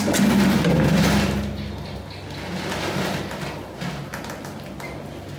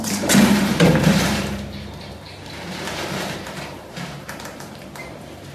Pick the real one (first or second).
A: first